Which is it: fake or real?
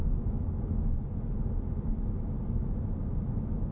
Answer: real